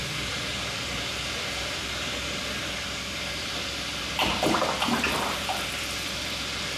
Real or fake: fake